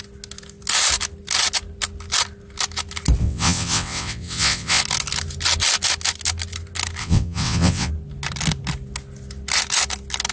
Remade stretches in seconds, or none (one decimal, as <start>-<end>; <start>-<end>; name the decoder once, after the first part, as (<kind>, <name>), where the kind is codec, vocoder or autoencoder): 3.2-4.8 (vocoder, WaveNeXt); 7.0-7.9